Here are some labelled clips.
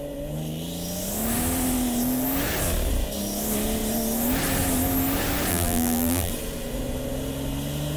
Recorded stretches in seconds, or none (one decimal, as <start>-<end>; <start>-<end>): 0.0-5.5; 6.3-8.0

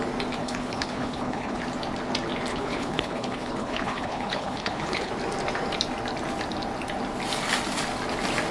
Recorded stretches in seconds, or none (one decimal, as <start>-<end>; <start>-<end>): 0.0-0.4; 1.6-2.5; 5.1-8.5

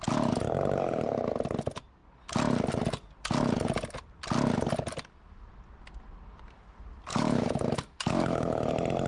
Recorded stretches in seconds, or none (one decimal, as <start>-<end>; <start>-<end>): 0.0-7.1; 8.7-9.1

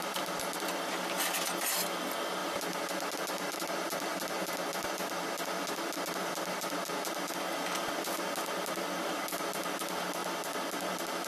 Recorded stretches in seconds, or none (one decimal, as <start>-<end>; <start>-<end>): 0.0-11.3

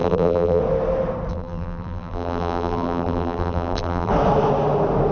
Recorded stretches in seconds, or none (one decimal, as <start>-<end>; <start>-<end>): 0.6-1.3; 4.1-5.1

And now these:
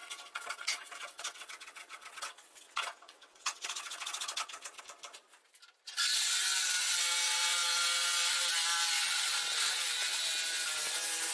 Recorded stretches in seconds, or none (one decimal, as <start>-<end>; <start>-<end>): 4.8-11.3

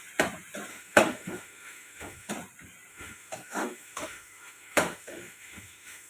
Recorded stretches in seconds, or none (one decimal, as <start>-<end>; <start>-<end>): 0.0-0.7; 2.3-2.9